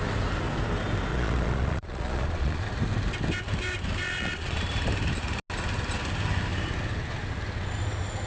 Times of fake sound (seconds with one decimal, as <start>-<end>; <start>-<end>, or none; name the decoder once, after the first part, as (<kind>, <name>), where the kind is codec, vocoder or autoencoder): 1.1-2.6 (vocoder, Vocos); 4.0-4.6